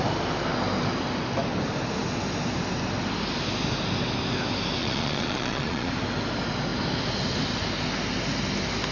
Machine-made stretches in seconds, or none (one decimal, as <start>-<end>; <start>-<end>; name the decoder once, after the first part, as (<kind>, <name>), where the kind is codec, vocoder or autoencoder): 4.8-5.9 (vocoder, Vocos)